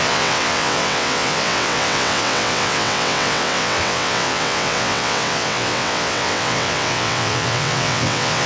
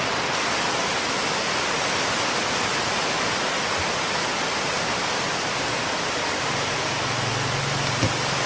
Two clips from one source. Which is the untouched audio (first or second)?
second